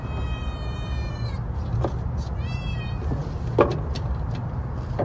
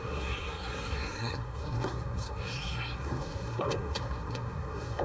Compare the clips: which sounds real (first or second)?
first